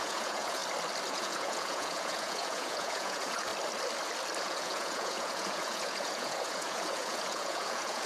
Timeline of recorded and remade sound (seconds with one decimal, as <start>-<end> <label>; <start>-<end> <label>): 0.0-0.6 remade; 0.6-1.1 recorded; 1.1-3.5 remade; 3.5-4.4 recorded; 4.4-8.1 remade